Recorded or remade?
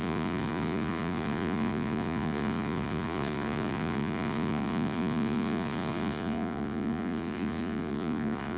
remade